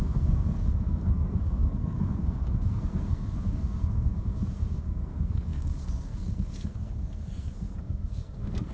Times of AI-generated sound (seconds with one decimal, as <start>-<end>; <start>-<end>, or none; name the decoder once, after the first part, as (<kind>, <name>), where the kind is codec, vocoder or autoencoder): 0.0-8.7 (codec, SNAC)